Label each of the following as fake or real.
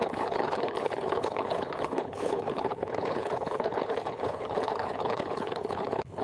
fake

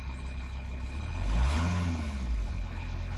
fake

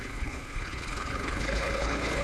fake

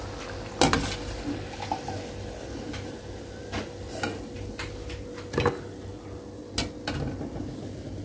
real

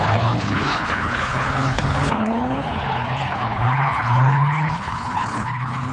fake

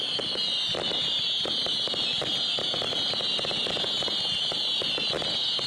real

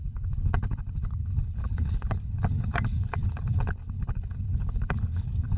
fake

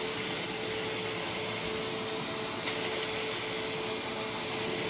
real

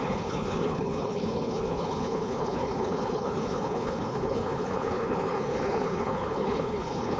fake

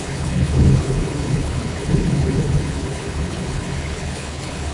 fake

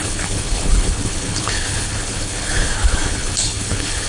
fake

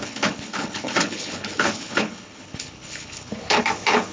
fake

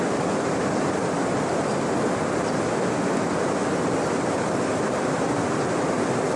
real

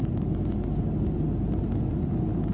real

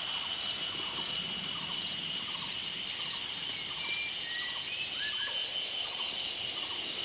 real